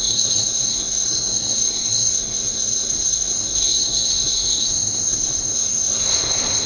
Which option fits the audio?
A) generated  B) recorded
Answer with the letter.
A